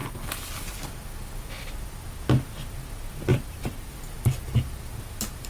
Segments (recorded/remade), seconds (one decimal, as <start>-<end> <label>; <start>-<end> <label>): 0.0-3.3 recorded; 3.3-3.9 remade; 3.9-5.5 recorded